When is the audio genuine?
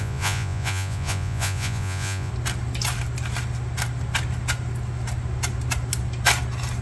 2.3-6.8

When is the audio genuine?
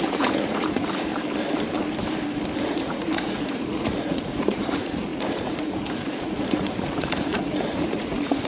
1.1-2.6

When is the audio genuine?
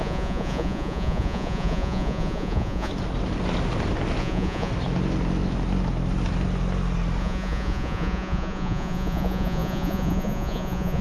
2.9-4.2; 4.7-7.2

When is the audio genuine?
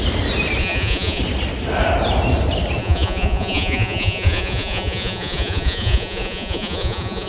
0.0-0.6; 1.2-2.8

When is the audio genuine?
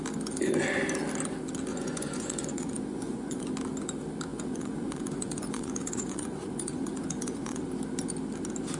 0.0-1.7; 3.5-4.3; 7.6-8.8